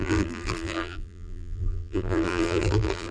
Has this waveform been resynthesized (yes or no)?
yes